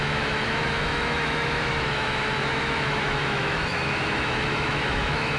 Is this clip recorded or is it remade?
remade